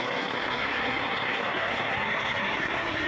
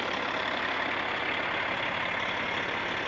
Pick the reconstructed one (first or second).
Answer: first